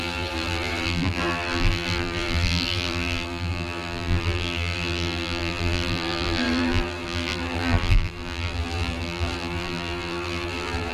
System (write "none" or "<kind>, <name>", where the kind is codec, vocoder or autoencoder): vocoder, BigVGAN v2